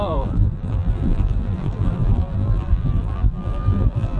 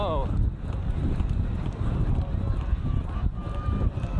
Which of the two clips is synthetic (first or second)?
first